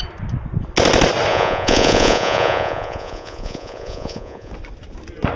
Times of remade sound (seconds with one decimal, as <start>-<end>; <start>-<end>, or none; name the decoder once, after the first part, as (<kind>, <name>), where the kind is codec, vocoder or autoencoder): 1.3-4.5 (vocoder, Vocos)